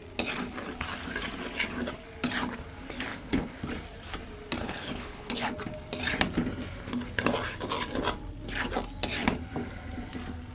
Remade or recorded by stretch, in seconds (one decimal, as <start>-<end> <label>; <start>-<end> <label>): 0.0-3.1 recorded; 3.1-3.6 remade; 3.6-4.6 recorded; 4.6-5.5 remade; 5.5-10.5 recorded